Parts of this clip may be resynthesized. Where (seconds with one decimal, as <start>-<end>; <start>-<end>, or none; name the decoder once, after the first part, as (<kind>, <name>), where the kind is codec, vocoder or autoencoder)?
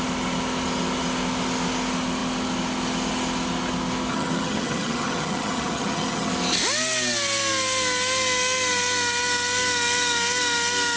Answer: 4.1-6.3 (vocoder, HiFi-GAN)